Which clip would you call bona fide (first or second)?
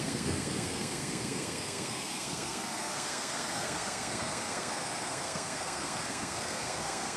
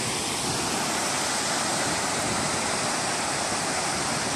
second